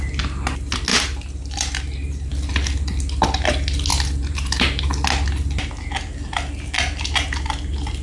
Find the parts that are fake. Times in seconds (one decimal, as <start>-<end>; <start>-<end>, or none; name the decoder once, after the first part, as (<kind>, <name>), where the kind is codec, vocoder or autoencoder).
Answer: 0.9-2.3 (vocoder, BigVGAN v2); 3.9-4.8